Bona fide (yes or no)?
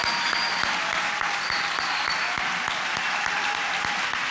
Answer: yes